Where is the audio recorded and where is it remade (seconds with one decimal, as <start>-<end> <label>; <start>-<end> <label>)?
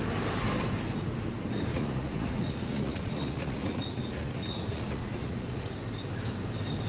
0.0-1.7 recorded; 1.7-5.7 remade; 5.7-6.9 recorded